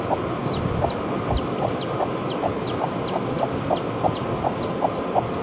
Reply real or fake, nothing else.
real